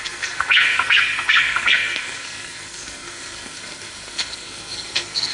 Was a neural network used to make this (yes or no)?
yes